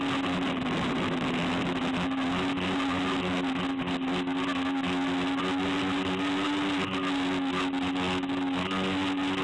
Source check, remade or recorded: recorded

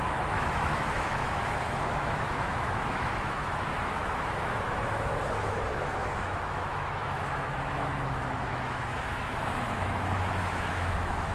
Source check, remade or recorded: remade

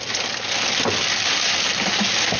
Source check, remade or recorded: recorded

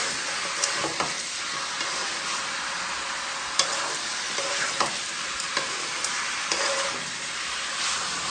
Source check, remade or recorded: recorded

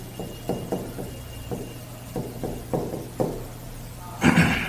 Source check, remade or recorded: recorded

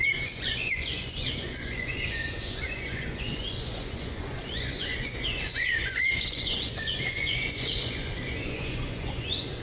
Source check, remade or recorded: remade